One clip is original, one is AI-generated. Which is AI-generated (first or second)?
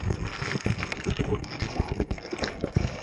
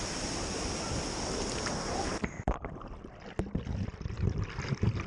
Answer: first